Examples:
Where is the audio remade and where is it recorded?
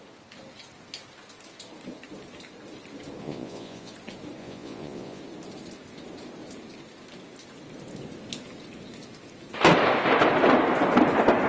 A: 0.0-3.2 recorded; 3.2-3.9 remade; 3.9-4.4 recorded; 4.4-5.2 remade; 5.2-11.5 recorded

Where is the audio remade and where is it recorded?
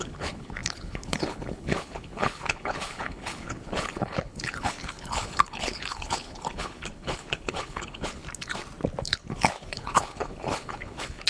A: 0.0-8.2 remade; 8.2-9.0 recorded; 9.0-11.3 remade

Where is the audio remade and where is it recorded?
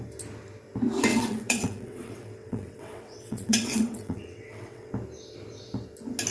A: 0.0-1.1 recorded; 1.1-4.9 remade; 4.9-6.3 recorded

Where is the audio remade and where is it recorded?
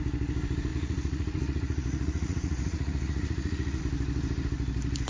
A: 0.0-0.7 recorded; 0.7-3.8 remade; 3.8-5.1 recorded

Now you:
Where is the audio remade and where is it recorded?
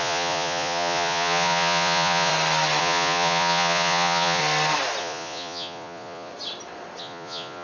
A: 0.0-2.3 remade; 2.3-2.8 recorded; 2.8-4.4 remade; 4.4-5.0 recorded; 5.0-6.3 remade; 6.3-7.0 recorded; 7.0-7.6 remade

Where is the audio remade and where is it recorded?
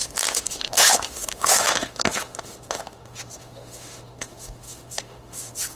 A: 0.0-5.8 remade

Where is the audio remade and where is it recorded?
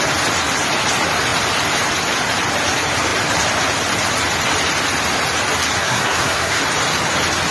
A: 0.0-5.8 recorded; 5.8-6.6 remade; 6.6-7.5 recorded